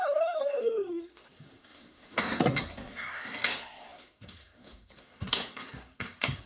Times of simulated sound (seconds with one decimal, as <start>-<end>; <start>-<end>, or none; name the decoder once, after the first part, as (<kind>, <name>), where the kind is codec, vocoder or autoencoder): 0.0-6.5 (codec, SNAC)